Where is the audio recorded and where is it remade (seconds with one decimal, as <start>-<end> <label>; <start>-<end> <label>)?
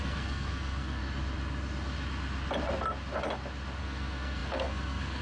0.0-1.0 remade; 1.0-3.8 recorded; 3.8-5.2 remade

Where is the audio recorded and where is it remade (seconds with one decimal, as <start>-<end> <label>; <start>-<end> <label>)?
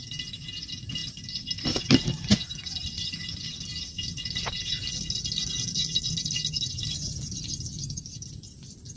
0.0-9.0 recorded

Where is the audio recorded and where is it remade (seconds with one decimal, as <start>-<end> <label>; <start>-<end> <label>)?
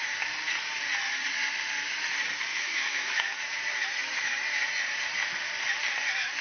0.0-2.5 recorded; 2.5-3.4 remade; 3.4-6.4 recorded